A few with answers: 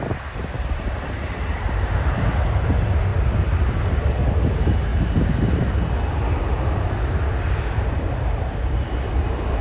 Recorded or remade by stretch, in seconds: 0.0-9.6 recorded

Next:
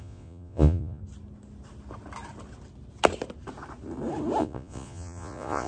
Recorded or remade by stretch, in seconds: 0.0-1.0 remade; 1.0-4.4 recorded; 4.4-5.7 remade

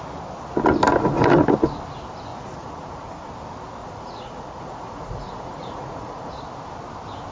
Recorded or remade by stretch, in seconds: 0.0-2.3 recorded; 2.3-3.3 remade; 3.3-3.8 recorded; 3.8-6.3 remade; 6.3-7.3 recorded

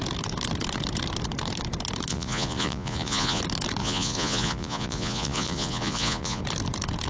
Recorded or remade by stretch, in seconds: 0.0-2.1 recorded; 2.1-3.4 remade; 3.4-3.8 recorded; 3.8-6.4 remade; 6.4-7.1 recorded

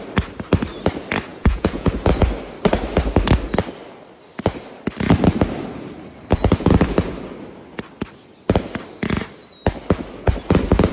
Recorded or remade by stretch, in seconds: 0.0-1.3 recorded; 1.3-1.9 remade; 1.9-10.9 recorded

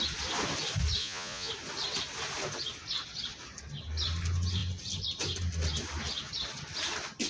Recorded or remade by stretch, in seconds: 0.0-1.0 recorded; 1.0-1.5 remade; 1.5-7.3 recorded